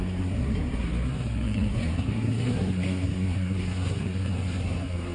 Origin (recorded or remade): remade